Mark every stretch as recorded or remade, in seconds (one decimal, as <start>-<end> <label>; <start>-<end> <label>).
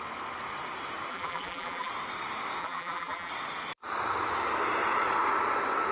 0.0-1.1 recorded; 1.1-1.9 remade; 1.9-2.6 recorded; 2.6-3.3 remade; 3.3-5.9 recorded